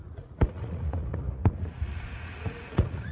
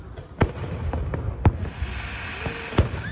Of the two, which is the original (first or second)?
second